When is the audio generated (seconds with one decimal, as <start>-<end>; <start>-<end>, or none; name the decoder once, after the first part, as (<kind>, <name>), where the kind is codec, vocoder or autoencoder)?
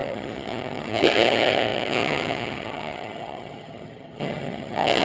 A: 0.0-5.0 (vocoder, HiFi-GAN)